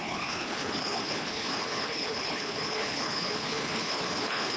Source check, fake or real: fake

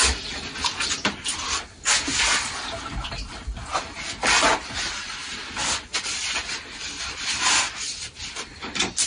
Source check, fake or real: real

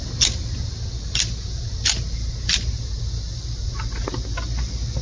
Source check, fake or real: real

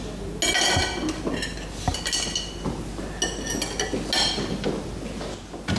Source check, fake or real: real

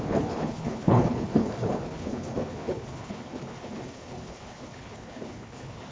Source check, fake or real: fake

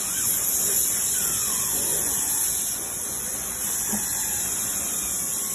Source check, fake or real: fake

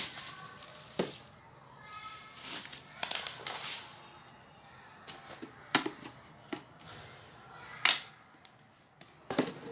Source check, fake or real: real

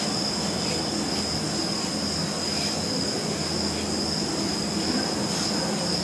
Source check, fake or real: real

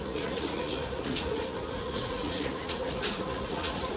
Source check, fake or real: fake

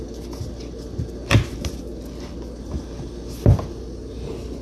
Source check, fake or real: real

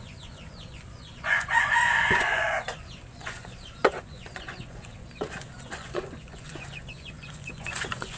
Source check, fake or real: fake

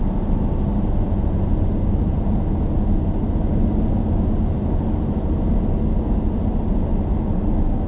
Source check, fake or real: real